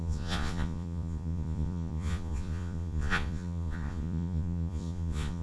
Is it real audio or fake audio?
fake